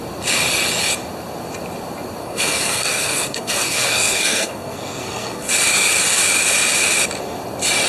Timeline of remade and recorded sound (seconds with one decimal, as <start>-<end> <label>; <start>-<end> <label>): 0.0-2.2 recorded; 2.2-5.5 remade; 5.5-7.9 recorded

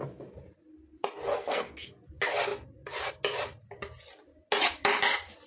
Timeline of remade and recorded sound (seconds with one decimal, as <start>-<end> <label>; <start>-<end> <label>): 0.0-1.3 recorded; 1.3-1.9 remade; 1.9-5.5 recorded

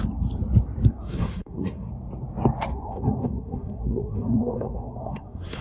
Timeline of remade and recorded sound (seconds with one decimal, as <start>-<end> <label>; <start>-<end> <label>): 0.0-0.9 recorded; 0.9-1.9 remade; 1.9-2.7 recorded; 2.7-5.6 remade

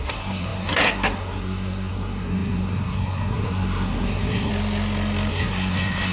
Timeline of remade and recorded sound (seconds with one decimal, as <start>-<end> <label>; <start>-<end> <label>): 0.0-4.5 remade; 4.5-5.3 recorded; 5.3-6.1 remade

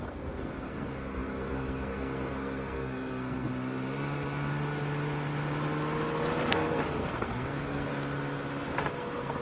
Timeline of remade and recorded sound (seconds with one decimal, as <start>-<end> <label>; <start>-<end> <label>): 0.0-3.5 remade; 3.5-6.5 recorded; 6.5-7.9 remade; 7.9-8.9 recorded; 8.9-9.4 remade

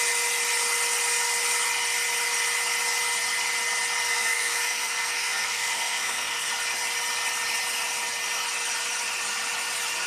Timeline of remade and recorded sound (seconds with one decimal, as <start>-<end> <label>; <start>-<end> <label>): 0.0-4.1 recorded; 4.1-6.5 remade; 6.5-10.1 recorded

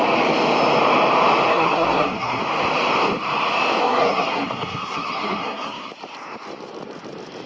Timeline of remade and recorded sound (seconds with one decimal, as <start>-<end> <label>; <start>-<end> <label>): 0.0-1.5 recorded; 1.5-2.4 remade; 2.4-3.8 recorded; 3.8-5.9 remade; 5.9-7.5 recorded